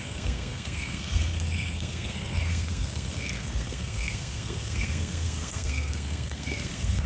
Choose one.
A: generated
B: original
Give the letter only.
A